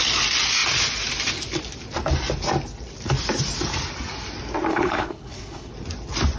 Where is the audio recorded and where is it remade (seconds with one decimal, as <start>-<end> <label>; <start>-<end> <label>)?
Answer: 0.0-4.7 recorded; 4.7-5.7 remade; 5.7-6.4 recorded